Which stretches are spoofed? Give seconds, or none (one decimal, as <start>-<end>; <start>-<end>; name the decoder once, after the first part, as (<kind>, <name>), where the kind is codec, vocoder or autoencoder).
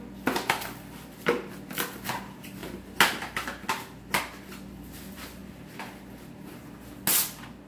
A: none